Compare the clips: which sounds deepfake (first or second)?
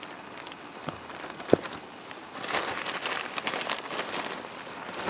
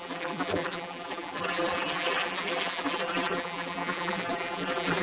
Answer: second